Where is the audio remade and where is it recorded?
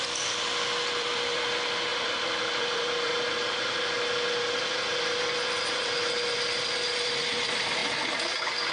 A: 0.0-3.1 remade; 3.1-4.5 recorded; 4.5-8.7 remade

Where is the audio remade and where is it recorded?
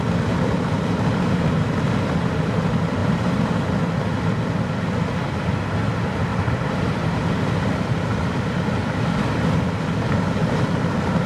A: 0.0-3.0 recorded; 3.0-3.5 remade; 3.5-6.3 recorded; 6.3-7.3 remade; 7.3-11.3 recorded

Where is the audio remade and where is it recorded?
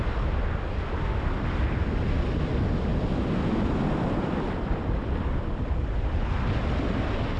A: 0.0-2.9 recorded; 2.9-5.4 remade; 5.4-7.4 recorded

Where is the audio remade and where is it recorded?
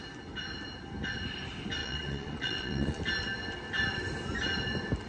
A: 0.0-1.8 recorded; 1.8-3.0 remade; 3.0-5.1 recorded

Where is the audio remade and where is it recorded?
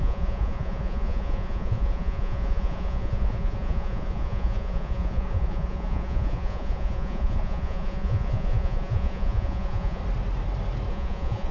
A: 0.0-10.0 remade; 10.0-10.9 recorded; 10.9-11.5 remade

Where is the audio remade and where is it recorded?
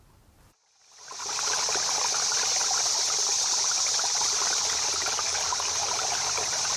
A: 0.0-5.3 recorded; 5.3-5.9 remade; 5.9-6.8 recorded